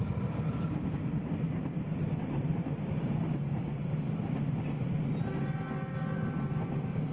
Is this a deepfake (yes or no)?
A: no